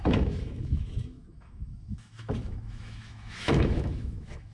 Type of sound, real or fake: fake